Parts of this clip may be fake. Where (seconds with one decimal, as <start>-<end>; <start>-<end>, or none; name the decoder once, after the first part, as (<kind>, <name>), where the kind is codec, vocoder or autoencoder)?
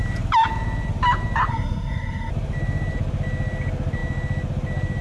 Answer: 1.5-2.3 (codec, SNAC)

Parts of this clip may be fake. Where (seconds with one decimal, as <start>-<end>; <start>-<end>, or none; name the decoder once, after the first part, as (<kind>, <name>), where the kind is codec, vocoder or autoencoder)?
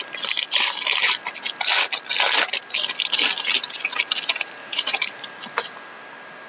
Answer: 4.6-5.3 (vocoder, Vocos)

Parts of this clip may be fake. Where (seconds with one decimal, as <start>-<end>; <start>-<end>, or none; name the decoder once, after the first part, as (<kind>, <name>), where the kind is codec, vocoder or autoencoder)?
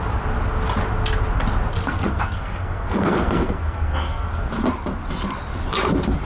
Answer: 1.8-4.5 (codec, SNAC)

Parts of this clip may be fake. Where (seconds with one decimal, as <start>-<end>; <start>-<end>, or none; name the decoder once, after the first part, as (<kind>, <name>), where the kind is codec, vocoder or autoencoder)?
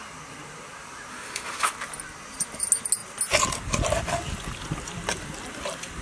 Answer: 1.1-1.7 (autoencoder, DAC-VAE)